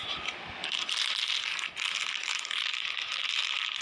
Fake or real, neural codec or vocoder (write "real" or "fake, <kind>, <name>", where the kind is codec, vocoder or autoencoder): real